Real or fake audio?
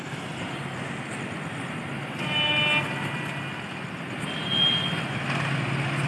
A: real